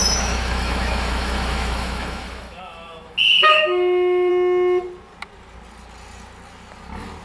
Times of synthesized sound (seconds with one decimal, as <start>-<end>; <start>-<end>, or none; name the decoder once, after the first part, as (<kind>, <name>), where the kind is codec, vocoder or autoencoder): 0.0-4.3 (autoencoder, DAC-VAE)